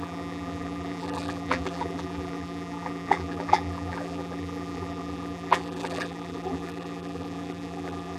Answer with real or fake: fake